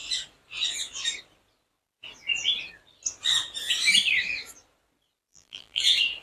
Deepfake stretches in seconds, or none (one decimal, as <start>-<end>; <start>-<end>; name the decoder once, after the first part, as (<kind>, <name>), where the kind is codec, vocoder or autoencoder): 5.3-5.8 (vocoder, BigVGAN v2)